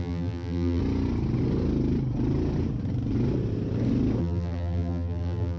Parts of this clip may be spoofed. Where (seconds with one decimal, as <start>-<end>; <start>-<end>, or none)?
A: 0.0-0.8; 4.2-5.6